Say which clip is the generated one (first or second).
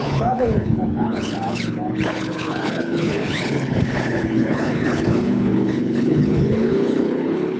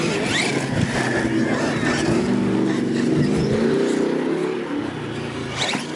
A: first